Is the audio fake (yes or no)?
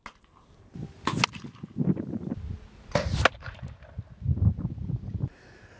no